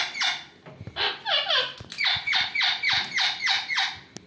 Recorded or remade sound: recorded